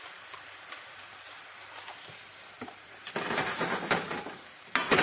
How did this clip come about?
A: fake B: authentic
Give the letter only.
B